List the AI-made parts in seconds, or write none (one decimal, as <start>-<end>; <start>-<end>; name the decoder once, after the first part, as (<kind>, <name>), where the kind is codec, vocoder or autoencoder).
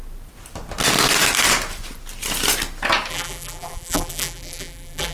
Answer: 3.1-5.1 (vocoder, BigVGAN v2)